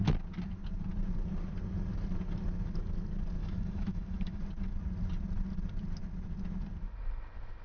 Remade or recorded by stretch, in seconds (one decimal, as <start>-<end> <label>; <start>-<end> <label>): 0.0-3.4 recorded; 3.4-4.4 remade; 4.4-7.6 recorded